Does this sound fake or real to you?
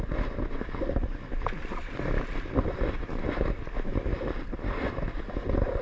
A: real